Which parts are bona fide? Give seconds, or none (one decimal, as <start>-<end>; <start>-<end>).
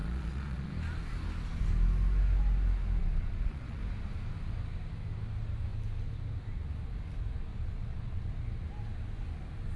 0.7-3.0; 3.8-7.5; 8.3-9.8